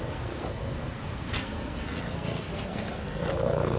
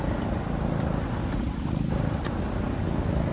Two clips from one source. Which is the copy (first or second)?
first